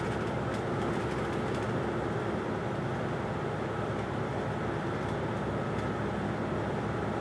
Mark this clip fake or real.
real